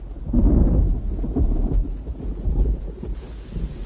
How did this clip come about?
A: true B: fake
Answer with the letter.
B